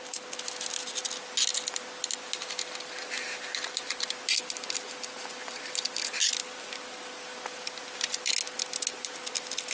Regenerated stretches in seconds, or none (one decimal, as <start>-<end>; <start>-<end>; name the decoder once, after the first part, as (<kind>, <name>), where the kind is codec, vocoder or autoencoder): none